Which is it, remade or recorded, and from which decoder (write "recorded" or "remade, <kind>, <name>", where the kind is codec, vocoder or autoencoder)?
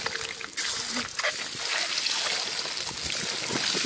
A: recorded